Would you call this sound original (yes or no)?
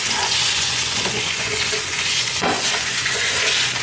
no